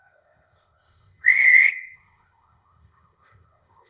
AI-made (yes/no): yes